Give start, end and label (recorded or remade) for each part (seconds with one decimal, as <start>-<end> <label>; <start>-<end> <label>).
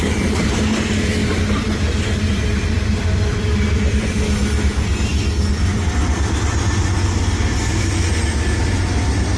0.0-1.2 recorded; 1.2-3.9 remade; 3.9-5.1 recorded; 5.1-6.4 remade; 6.4-9.4 recorded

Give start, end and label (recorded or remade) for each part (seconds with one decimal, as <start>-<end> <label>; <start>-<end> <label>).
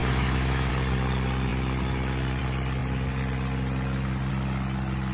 0.0-0.7 remade; 0.7-5.1 recorded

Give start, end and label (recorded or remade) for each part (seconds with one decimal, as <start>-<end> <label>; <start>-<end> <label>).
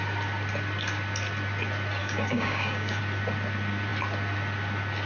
0.0-2.0 recorded; 2.0-3.0 remade; 3.0-5.1 recorded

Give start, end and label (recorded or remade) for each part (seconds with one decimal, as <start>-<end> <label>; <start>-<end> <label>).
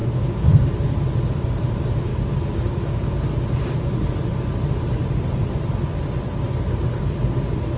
0.0-0.7 remade; 0.7-2.1 recorded; 2.1-3.1 remade; 3.1-7.8 recorded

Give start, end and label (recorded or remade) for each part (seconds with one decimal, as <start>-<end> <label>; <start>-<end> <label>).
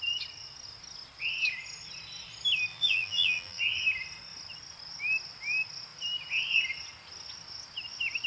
0.0-2.7 recorded; 2.7-3.6 remade; 3.6-8.3 recorded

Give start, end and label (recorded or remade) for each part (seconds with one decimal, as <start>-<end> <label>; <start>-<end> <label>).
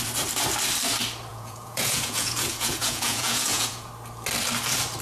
0.0-1.3 recorded; 1.3-3.9 remade; 3.9-5.0 recorded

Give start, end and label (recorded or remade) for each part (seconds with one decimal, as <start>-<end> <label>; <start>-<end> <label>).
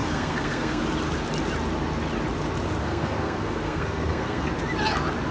0.0-0.8 remade; 0.8-2.8 recorded; 2.8-4.5 remade; 4.5-5.3 recorded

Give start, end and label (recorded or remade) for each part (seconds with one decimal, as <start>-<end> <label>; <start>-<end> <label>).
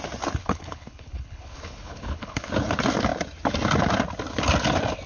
0.0-0.4 recorded; 0.4-2.5 remade; 2.5-5.1 recorded